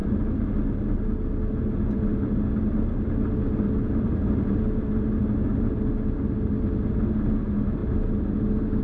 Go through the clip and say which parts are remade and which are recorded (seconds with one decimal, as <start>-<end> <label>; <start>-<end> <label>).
0.0-8.8 recorded

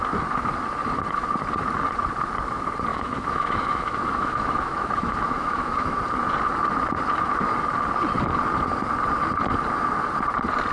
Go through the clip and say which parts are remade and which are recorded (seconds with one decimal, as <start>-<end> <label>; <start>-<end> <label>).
0.0-2.9 recorded; 2.9-6.0 remade; 6.0-10.7 recorded

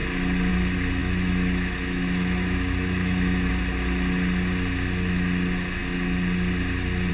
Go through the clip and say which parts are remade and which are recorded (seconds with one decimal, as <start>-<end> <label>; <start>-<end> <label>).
0.0-1.0 recorded; 1.0-3.5 remade; 3.5-7.1 recorded

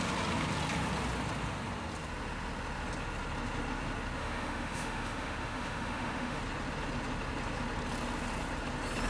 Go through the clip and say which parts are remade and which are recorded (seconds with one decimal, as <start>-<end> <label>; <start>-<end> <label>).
0.0-4.2 recorded; 4.2-6.4 remade; 6.4-9.1 recorded

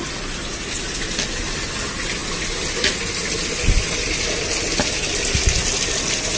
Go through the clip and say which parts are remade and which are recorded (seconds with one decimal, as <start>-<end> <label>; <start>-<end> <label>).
0.0-6.4 recorded